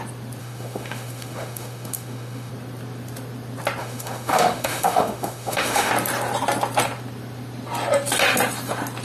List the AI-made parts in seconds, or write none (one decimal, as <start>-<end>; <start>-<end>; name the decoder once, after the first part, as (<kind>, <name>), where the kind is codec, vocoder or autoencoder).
0.4-2.5 (autoencoder, DAC-VAE); 3.8-5.9